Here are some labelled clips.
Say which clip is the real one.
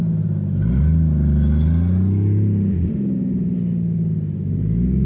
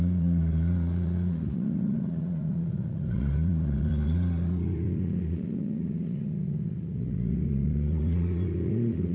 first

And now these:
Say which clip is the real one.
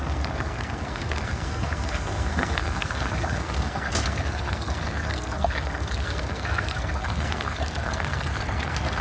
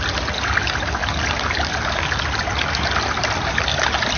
second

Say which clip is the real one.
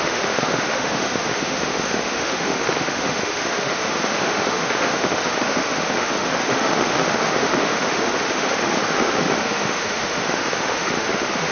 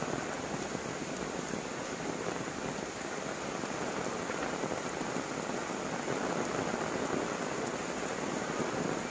second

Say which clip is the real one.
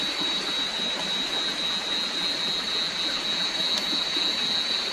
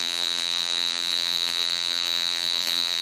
first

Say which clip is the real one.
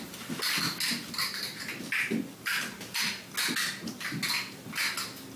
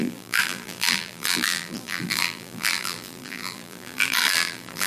first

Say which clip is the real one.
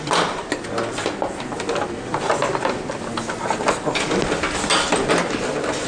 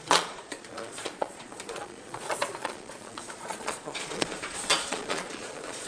first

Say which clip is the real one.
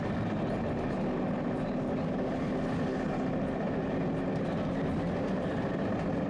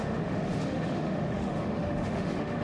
first